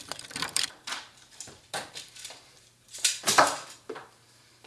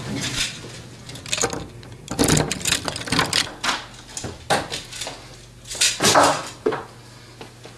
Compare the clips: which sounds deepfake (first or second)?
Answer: first